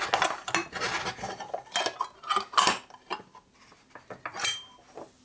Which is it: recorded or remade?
recorded